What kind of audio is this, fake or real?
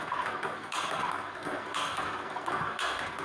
fake